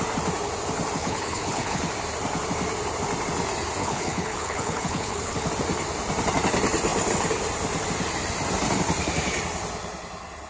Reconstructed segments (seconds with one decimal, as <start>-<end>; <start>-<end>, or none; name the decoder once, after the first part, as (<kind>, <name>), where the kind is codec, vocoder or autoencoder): 1.0-1.8 (codec, HILCodec); 3.8-5.5